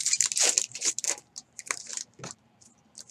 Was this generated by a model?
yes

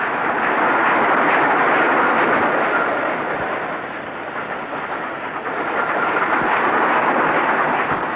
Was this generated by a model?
no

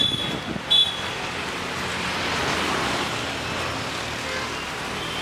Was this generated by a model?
no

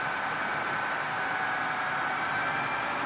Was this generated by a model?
yes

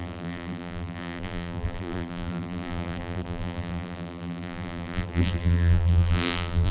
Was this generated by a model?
yes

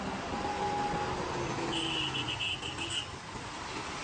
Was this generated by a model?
no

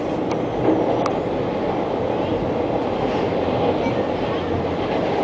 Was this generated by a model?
no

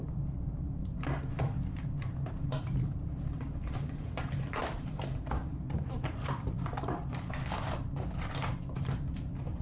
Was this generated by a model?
yes